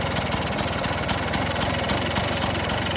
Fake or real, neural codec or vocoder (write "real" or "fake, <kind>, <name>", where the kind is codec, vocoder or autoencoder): real